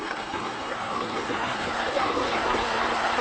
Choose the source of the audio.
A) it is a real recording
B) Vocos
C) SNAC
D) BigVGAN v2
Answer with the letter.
C